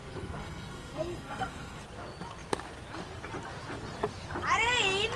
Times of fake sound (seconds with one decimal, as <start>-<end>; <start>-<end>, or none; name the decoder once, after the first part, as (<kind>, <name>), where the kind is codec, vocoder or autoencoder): 0.0-1.8 (codec, SNAC)